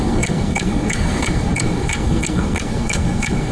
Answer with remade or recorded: remade